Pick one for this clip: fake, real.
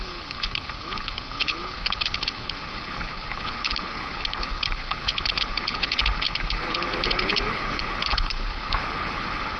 fake